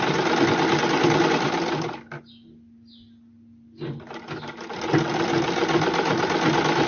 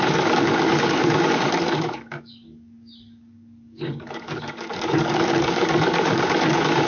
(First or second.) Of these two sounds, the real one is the first